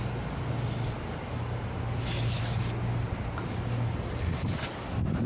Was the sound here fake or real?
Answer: real